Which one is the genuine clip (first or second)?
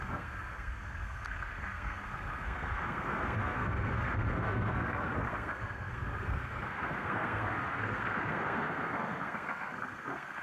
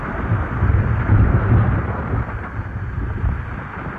second